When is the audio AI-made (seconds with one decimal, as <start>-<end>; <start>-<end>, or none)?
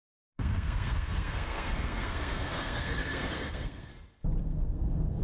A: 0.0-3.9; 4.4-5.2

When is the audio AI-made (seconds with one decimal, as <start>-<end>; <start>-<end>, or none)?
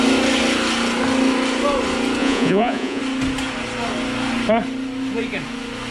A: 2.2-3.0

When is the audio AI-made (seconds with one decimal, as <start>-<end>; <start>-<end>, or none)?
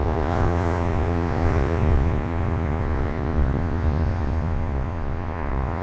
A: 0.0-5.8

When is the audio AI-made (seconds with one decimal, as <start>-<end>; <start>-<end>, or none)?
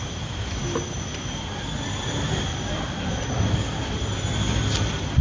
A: 0.0-5.2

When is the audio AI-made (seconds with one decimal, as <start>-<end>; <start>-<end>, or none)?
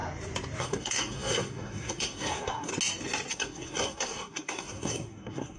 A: 0.6-2.7; 3.3-5.6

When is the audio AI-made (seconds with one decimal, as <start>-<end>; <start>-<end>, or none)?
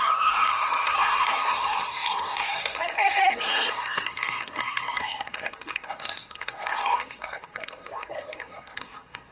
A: 0.0-9.3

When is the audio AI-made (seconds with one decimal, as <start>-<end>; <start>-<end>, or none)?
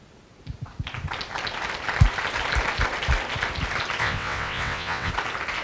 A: 4.0-5.1